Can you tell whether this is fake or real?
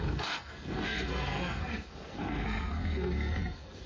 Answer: fake